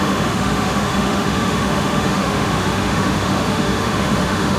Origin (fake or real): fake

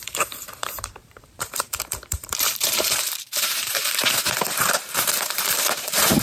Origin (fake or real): fake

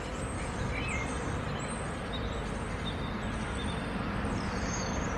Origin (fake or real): real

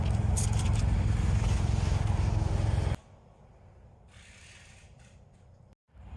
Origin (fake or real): real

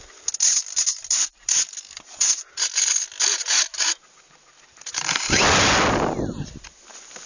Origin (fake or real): real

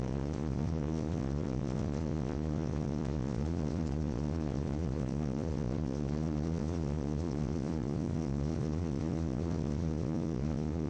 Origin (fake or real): fake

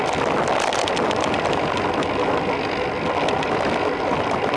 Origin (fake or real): real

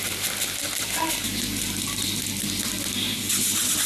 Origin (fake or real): real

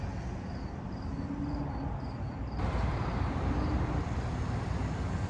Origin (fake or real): real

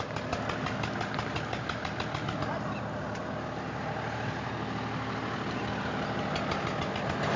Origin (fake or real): real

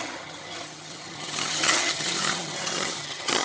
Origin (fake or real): fake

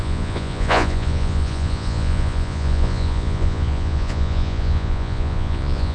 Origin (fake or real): fake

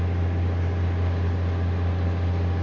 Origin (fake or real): real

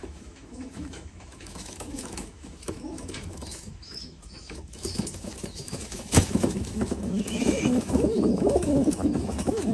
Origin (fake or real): fake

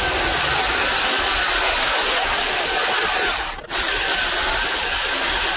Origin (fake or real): real